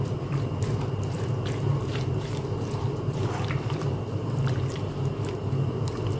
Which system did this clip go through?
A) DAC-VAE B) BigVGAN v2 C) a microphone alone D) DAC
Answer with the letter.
B